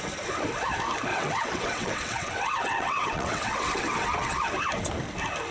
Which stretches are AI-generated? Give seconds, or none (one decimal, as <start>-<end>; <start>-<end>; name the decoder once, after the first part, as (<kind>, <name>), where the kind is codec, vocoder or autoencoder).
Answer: 1.1-4.4 (vocoder, WaveNeXt)